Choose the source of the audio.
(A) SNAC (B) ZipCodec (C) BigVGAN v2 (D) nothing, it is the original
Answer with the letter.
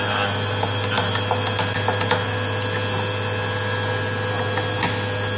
D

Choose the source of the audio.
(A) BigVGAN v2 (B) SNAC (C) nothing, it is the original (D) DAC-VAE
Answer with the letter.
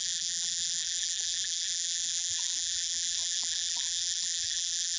A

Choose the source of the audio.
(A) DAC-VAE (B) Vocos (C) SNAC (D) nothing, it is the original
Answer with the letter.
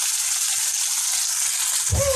D